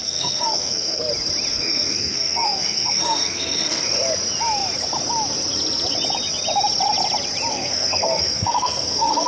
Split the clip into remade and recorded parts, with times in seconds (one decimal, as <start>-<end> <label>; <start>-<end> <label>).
0.0-1.0 remade; 1.0-1.5 recorded; 1.5-3.9 remade; 3.9-7.5 recorded; 7.5-9.3 remade